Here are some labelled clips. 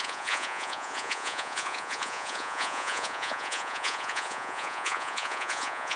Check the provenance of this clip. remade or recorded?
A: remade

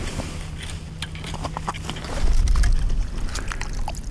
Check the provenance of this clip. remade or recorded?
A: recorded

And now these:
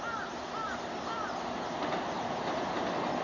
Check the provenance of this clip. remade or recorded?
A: recorded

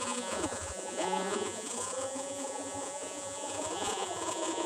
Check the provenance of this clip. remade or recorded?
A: remade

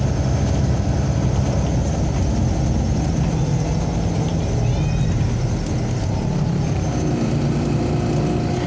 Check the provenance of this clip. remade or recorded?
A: recorded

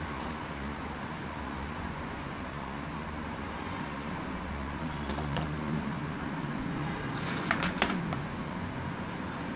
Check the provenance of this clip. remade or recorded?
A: remade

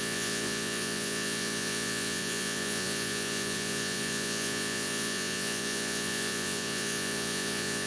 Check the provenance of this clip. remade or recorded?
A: remade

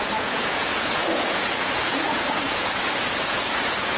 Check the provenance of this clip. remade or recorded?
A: remade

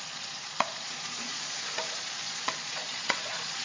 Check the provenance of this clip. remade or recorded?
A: remade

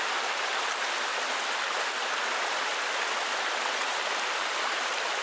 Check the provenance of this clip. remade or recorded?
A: recorded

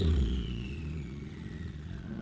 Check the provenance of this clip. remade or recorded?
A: remade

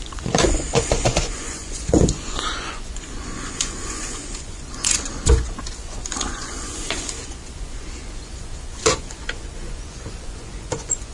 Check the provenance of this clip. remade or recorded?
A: remade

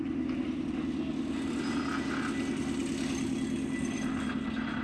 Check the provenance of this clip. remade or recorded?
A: recorded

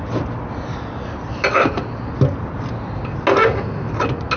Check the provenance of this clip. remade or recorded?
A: recorded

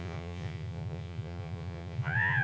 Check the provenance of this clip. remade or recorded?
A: remade